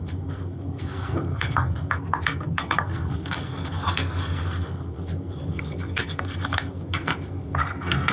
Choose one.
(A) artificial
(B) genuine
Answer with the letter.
A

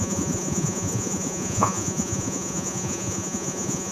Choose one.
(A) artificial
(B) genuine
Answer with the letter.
A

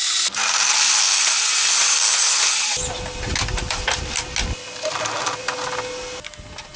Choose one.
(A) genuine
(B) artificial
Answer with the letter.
A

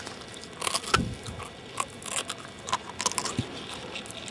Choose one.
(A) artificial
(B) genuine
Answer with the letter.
B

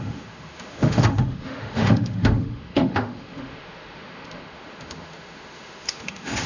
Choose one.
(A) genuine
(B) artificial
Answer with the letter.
B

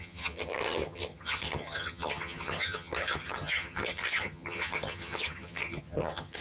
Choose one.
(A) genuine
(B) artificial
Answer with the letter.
B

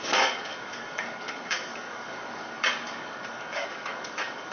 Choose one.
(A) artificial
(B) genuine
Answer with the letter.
A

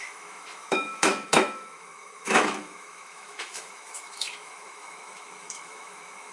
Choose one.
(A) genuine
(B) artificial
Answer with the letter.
B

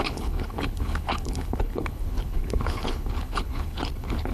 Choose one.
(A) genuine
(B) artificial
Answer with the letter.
B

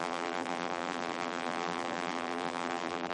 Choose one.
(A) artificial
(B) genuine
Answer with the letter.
A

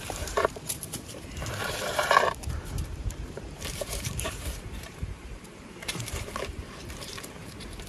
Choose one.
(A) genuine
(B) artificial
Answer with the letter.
B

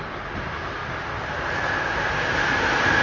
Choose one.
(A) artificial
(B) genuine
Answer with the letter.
B